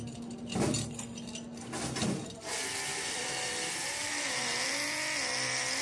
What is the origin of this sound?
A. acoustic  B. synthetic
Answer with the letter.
A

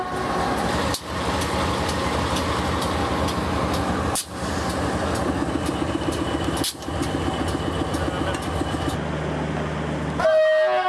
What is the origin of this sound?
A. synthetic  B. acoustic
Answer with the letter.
B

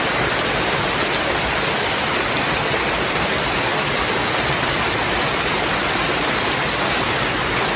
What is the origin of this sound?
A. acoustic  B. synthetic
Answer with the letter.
A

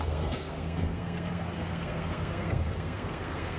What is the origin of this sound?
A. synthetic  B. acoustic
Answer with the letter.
A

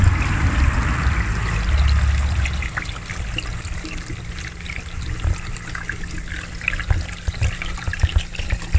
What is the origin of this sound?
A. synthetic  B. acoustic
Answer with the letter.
B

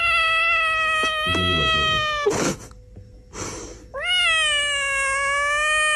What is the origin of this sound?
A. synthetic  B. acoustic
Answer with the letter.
B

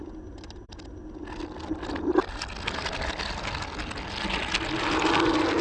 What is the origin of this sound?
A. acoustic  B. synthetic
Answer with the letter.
A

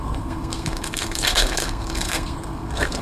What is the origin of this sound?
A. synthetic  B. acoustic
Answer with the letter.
A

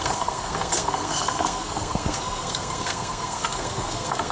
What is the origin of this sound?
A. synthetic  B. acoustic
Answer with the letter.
A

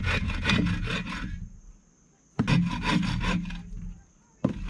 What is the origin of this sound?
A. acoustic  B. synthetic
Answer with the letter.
A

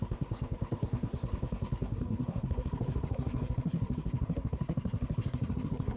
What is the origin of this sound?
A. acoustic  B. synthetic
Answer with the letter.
B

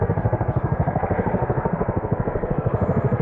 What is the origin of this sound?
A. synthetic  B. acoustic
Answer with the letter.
A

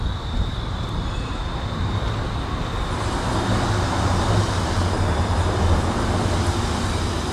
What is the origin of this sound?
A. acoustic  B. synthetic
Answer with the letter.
A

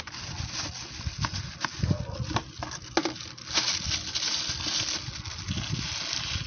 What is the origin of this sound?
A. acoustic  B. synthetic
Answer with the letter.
A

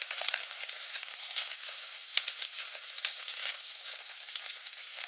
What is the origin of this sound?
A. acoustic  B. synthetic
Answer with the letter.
B